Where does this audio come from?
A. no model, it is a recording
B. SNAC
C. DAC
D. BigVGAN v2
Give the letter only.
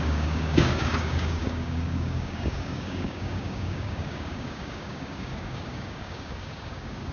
C